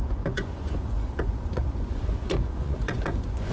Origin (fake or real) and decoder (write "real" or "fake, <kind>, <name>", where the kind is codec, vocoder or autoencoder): fake, vocoder, Vocos